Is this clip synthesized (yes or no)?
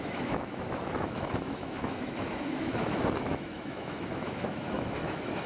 yes